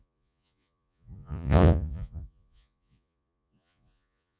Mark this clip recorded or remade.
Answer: remade